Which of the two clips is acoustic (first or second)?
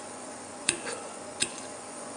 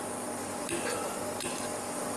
second